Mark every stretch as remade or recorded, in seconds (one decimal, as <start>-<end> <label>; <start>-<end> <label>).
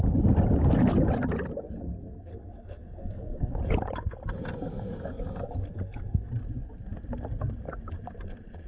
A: 0.0-2.3 recorded; 2.3-3.6 remade; 3.6-5.7 recorded; 5.7-6.3 remade; 6.3-8.7 recorded